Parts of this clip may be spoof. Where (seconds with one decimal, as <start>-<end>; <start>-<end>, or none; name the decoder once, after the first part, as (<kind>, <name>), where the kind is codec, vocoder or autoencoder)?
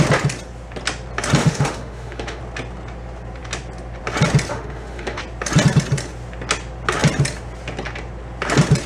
1.4-2.4 (autoencoder, DAC-VAE); 4.5-5.2